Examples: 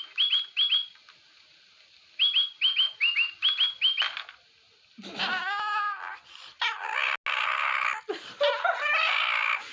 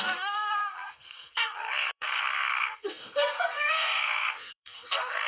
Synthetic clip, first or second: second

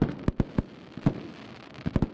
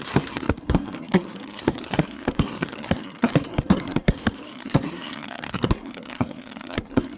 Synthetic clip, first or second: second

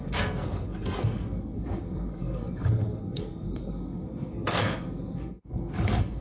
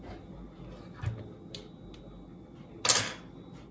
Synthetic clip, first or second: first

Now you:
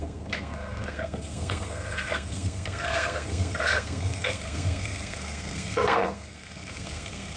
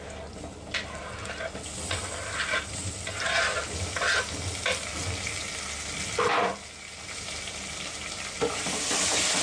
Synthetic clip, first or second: first